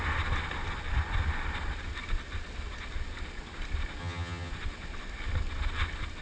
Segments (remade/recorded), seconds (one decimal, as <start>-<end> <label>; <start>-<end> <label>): 0.0-4.0 recorded; 4.0-4.5 remade; 4.5-6.2 recorded